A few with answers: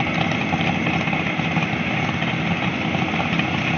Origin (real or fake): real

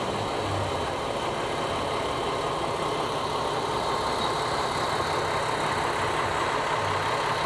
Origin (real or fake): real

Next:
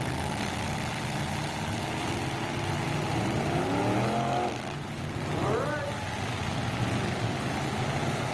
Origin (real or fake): real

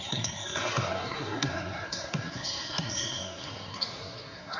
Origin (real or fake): fake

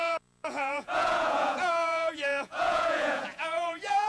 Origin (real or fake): fake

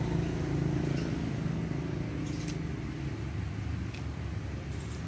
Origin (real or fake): real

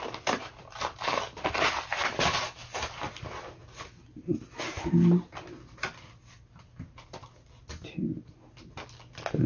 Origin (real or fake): real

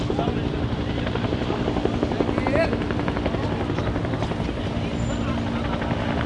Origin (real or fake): real